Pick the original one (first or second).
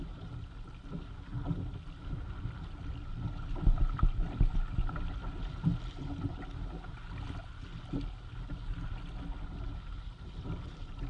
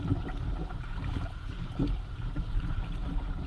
first